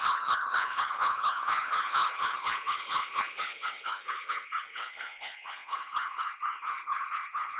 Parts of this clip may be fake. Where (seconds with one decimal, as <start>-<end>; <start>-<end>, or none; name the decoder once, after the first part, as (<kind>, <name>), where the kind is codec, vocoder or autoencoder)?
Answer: 0.0-7.6 (codec, HILCodec)